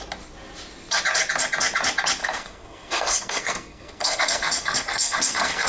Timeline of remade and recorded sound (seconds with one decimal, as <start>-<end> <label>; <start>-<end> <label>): 0.0-2.2 recorded; 2.2-5.7 remade